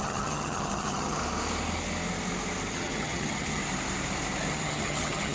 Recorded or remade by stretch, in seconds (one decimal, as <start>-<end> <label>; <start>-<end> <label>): 0.0-1.2 remade; 1.2-2.7 recorded; 2.7-3.6 remade; 3.6-4.5 recorded; 4.5-5.3 remade